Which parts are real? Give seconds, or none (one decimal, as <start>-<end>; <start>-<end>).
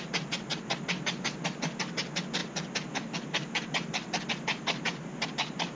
0.0-5.8